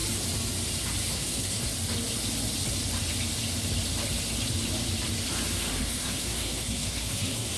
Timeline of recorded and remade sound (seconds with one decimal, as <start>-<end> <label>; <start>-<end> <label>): 0.0-1.1 recorded; 1.1-1.6 remade; 1.6-5.7 recorded; 5.7-7.6 remade